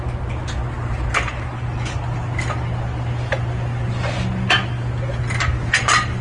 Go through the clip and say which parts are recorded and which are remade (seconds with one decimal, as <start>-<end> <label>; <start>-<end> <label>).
0.0-6.2 recorded